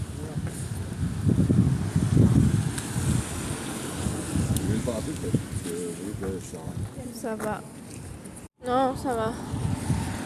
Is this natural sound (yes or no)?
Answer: yes